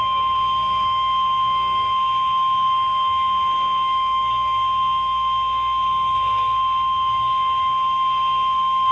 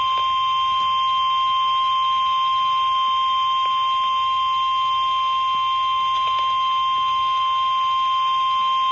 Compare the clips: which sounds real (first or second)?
second